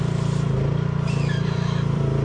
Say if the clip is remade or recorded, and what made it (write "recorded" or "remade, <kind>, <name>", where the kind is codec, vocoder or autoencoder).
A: remade, vocoder, BigVGAN v2